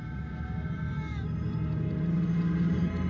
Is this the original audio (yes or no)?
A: yes